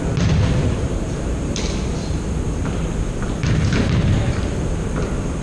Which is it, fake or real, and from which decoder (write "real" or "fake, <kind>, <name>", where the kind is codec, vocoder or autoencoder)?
real